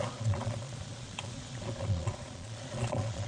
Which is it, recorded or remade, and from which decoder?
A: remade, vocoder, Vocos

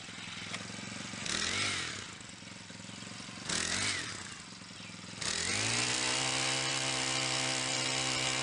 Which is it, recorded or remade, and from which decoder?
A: recorded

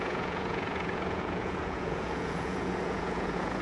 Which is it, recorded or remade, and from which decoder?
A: remade, vocoder, Vocos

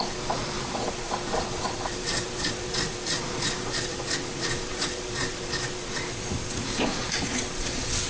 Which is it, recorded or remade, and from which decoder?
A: remade, vocoder, Vocos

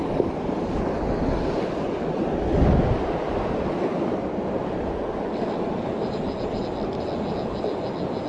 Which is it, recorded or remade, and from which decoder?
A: recorded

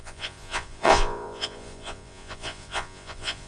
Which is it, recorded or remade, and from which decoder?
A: remade, vocoder, Vocos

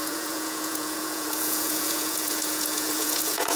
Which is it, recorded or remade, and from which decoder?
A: remade, vocoder, Vocos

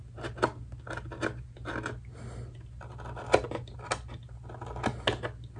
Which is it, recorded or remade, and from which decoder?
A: recorded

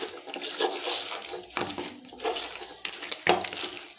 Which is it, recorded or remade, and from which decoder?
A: recorded